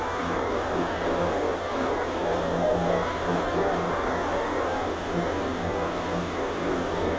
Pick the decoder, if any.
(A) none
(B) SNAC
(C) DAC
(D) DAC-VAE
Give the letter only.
C